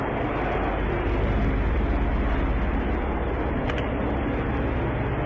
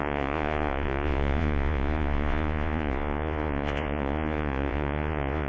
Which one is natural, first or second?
first